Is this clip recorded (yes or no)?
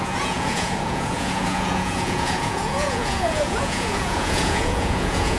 no